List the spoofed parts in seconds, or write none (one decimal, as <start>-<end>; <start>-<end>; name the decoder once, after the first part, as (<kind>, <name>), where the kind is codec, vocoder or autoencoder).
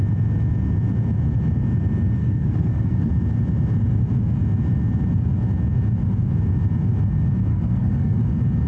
2.2-3.1 (codec, SNAC); 7.5-8.2